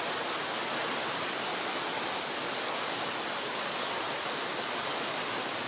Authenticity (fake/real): real